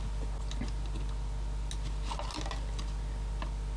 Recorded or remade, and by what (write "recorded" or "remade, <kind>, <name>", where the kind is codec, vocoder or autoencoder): recorded